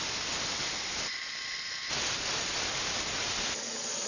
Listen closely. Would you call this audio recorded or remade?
recorded